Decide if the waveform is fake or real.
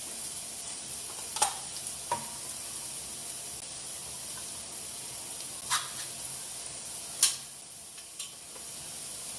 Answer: real